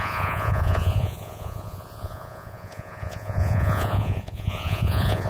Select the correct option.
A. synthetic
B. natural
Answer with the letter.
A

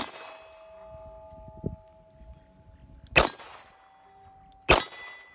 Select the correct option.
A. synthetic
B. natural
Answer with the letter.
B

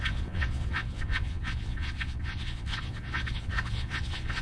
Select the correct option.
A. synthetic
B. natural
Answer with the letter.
A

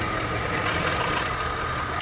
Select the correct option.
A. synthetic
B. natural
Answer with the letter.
B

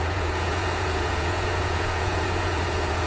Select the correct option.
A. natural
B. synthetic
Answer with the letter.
B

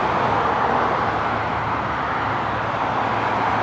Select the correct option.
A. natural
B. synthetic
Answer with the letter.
A